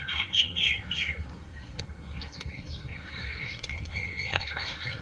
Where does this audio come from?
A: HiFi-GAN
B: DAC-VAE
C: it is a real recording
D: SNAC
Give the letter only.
D